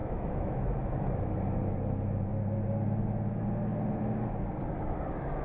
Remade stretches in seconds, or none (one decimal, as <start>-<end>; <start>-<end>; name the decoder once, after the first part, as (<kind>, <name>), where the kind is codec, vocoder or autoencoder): 0.0-1.3 (autoencoder, DAC-VAE)

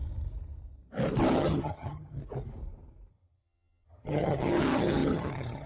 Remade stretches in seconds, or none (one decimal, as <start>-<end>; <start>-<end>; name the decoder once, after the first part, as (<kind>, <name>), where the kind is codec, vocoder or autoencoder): 1.3-2.2 (vocoder, HiFi-GAN); 3.1-5.7

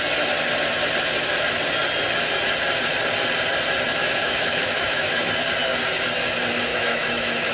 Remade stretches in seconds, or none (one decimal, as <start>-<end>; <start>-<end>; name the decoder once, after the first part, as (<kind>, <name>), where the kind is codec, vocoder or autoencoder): 4.0-5.3 (autoencoder, DAC-VAE); 6.7-7.5

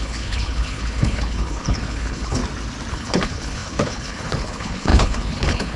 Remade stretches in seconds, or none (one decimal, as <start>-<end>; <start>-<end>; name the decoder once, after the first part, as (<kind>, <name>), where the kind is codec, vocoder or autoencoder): 0.0-2.4 (codec, HILCodec); 2.9-5.8